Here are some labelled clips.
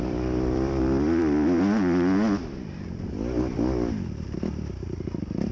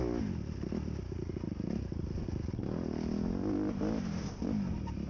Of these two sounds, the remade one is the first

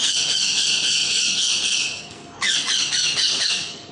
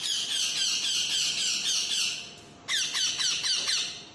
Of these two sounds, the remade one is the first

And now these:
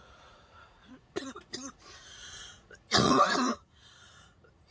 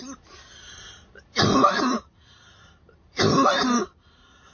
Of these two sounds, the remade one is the first